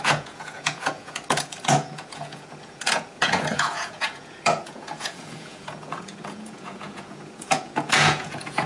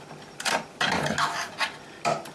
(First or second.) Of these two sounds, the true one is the second